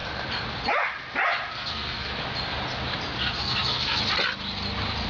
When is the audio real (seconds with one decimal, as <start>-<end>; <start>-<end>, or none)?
0.0-1.5; 2.2-3.2; 4.0-5.1